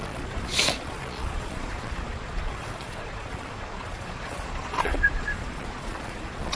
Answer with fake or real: fake